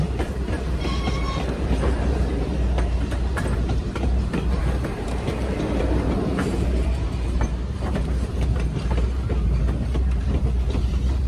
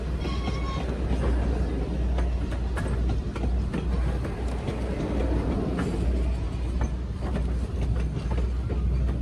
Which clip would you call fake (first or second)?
first